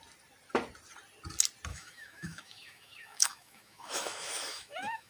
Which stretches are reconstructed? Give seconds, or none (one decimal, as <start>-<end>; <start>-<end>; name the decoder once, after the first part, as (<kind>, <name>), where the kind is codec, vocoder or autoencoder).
1.7-5.1 (autoencoder, DAC-VAE)